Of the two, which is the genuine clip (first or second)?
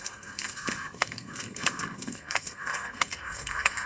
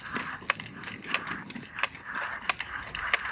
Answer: second